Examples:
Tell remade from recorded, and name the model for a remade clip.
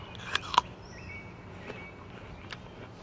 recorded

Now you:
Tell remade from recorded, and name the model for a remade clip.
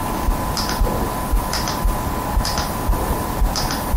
recorded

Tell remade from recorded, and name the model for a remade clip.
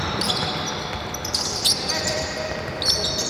recorded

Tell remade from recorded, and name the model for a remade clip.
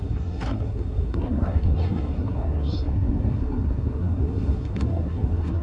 remade, codec, SNAC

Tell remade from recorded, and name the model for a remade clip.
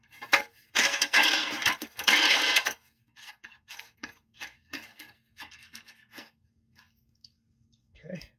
remade, codec, SNAC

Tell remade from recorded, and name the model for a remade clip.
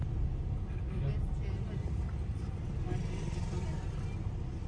recorded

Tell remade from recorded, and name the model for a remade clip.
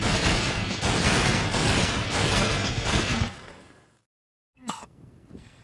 remade, codec, SNAC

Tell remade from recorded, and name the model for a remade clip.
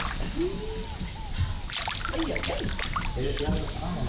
recorded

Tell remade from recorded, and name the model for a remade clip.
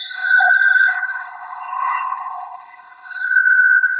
remade, codec, HILCodec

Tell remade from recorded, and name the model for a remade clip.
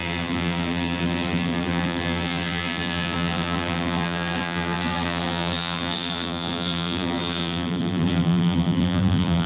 remade, vocoder, BigVGAN v2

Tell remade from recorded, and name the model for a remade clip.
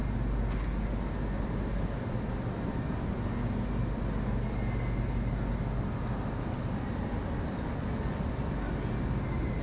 recorded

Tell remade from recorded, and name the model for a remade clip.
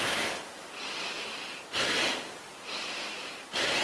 remade, vocoder, BigVGAN v2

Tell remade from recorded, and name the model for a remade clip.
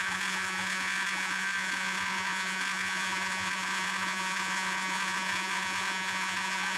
remade, vocoder, Vocos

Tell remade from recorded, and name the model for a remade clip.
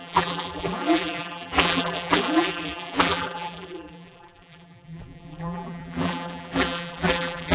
remade, vocoder, BigVGAN v2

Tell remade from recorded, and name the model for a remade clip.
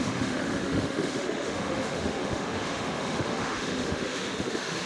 remade, autoencoder, DAC-VAE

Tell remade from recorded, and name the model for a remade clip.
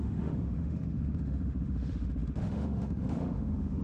remade, autoencoder, DAC-VAE